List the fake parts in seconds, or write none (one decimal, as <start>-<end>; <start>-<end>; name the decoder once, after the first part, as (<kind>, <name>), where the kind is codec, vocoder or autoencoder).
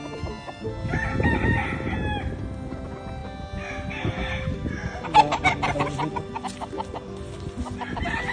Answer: none